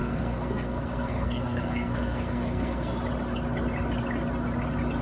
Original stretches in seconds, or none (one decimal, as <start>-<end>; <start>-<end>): 3.0-5.0